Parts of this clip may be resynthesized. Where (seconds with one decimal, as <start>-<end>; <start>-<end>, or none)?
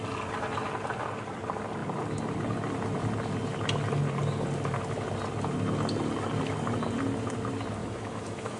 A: 7.8-8.6